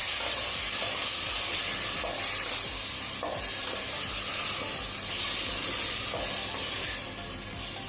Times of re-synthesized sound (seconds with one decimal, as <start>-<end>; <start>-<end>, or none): none